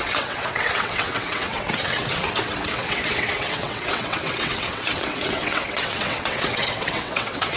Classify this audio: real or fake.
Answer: fake